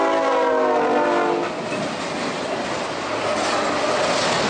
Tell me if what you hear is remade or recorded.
recorded